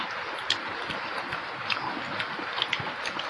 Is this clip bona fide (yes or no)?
yes